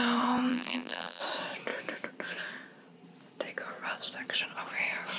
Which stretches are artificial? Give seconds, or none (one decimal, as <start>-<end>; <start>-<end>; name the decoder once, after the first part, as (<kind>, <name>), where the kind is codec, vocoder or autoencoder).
0.5-1.2 (vocoder, BigVGAN v2)